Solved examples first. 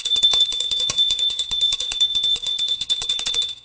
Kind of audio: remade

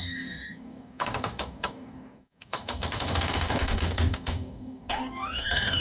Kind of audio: remade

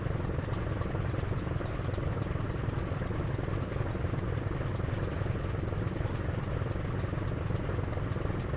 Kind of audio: recorded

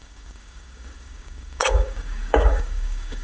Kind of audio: remade